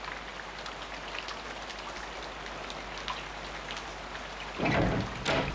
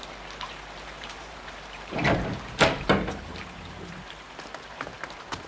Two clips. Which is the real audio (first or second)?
first